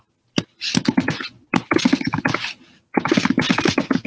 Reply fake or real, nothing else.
real